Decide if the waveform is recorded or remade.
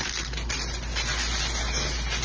recorded